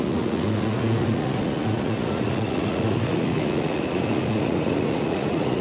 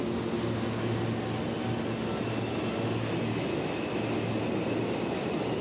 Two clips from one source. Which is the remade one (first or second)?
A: first